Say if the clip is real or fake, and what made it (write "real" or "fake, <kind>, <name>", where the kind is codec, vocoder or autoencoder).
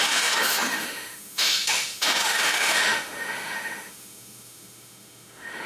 fake, autoencoder, DAC-VAE